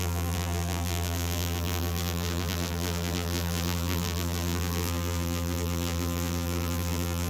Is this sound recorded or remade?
remade